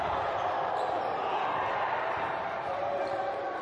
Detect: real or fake fake